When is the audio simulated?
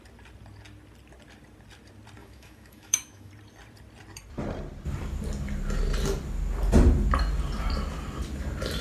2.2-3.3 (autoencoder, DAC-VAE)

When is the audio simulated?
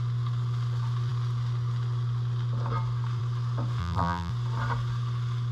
3.8-4.3 (vocoder, BigVGAN v2)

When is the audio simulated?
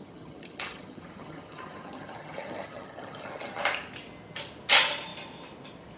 0.0-3.6 (vocoder, HiFi-GAN)